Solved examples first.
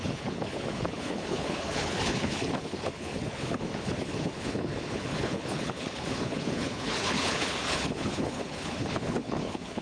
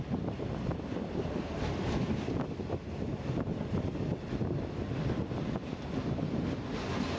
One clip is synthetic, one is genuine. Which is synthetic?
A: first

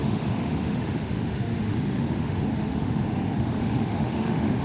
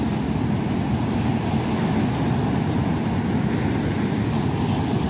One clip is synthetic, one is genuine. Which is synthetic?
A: first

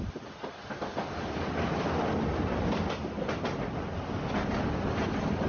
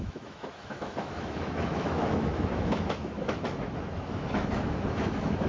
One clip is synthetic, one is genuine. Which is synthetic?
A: second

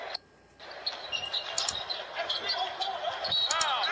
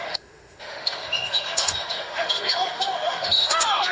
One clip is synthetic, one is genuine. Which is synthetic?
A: second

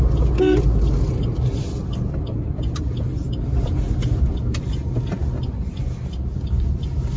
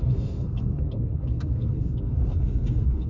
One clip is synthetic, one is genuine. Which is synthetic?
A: second